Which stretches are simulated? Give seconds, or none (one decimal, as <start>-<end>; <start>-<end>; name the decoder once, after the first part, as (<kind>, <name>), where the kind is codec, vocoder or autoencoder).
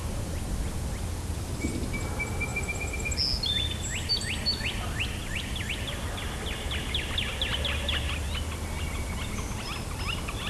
none